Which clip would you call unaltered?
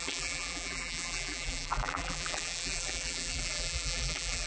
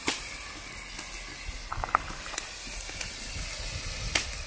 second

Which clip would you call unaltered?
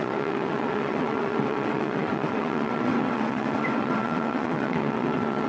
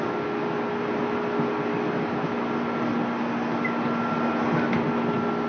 second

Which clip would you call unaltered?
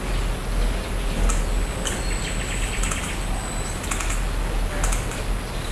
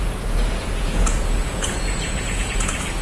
first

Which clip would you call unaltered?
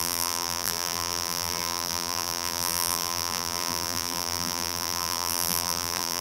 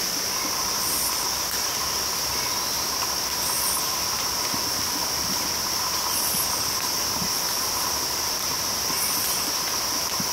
second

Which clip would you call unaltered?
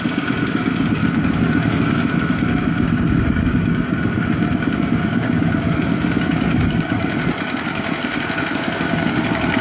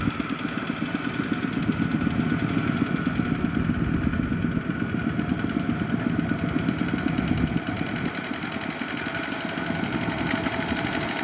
second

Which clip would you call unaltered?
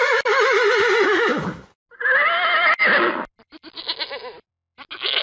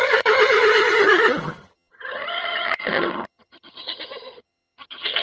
first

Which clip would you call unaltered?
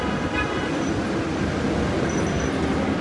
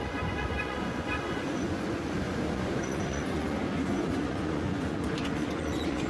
first